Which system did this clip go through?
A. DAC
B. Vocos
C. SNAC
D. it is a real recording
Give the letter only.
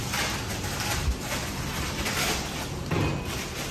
D